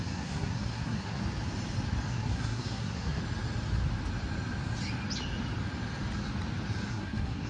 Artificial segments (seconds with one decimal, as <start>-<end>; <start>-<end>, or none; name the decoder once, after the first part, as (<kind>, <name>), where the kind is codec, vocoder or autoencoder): 0.0-1.2 (codec, SNAC); 2.1-3.2; 6.9-7.5